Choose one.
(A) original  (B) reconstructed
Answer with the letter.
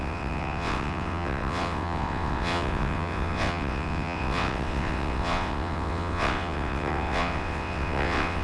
B